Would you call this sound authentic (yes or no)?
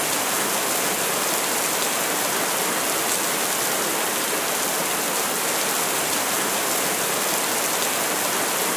yes